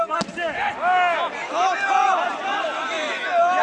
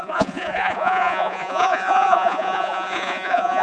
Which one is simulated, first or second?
second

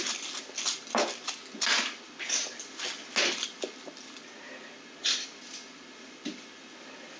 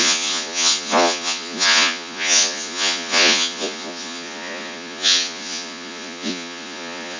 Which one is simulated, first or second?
second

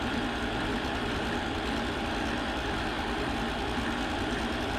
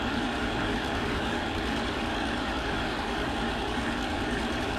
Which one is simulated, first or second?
second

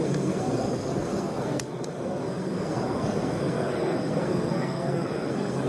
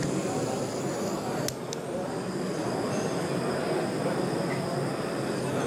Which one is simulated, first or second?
first